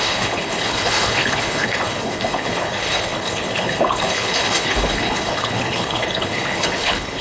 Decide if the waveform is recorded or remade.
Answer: remade